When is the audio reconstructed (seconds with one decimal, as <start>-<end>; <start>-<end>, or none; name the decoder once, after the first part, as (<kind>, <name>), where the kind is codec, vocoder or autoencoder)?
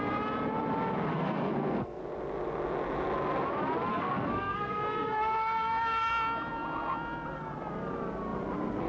1.1-2.0 (codec, SNAC); 3.9-6.1